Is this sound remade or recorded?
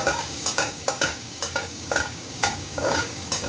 remade